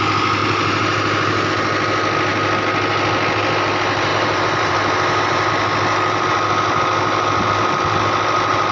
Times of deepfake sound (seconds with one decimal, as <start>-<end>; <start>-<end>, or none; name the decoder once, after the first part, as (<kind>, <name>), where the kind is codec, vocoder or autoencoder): 0.4-1.5 (vocoder, BigVGAN v2); 4.1-5.5